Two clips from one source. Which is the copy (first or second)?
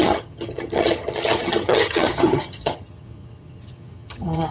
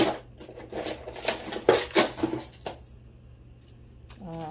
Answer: first